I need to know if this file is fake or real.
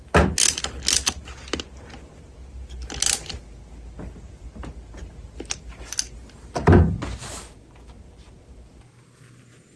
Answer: real